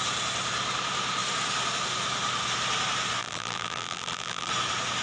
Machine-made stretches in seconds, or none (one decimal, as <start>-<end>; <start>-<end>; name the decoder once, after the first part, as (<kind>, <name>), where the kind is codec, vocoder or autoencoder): 3.2-4.5 (vocoder, BigVGAN v2)